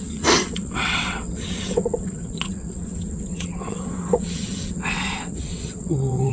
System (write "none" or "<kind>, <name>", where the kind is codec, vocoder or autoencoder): vocoder, WaveNeXt